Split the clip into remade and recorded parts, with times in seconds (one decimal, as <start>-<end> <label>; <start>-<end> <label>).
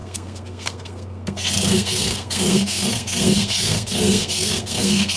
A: 0.0-5.2 remade